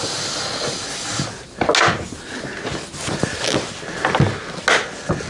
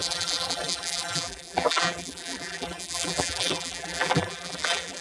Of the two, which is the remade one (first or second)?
second